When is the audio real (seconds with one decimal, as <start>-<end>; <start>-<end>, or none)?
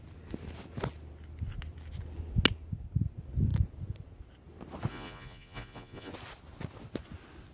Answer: 0.0-4.9; 6.1-7.5